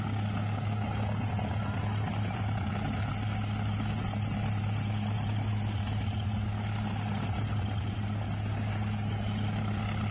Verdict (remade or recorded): recorded